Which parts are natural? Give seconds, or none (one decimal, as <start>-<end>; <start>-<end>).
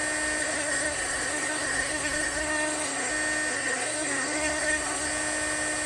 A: 0.0-0.4; 3.1-3.5; 5.1-5.9